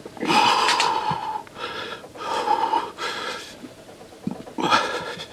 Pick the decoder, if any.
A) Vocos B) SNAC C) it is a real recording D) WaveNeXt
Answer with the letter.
C